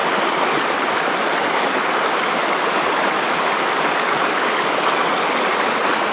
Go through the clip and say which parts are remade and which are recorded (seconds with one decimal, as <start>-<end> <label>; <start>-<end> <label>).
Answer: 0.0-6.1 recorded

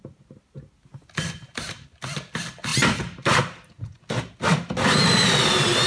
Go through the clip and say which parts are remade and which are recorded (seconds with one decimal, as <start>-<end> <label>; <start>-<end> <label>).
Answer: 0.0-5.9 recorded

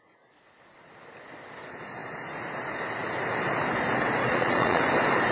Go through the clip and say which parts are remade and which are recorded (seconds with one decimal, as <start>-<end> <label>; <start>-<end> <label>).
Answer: 0.0-4.2 recorded; 4.2-4.8 remade; 4.8-5.3 recorded